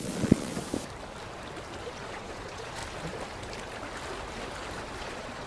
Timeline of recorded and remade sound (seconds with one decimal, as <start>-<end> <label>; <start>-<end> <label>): 0.0-0.5 remade; 0.5-2.0 recorded; 2.0-2.8 remade; 2.8-5.0 recorded; 5.0-5.5 remade